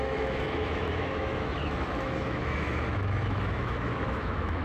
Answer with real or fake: fake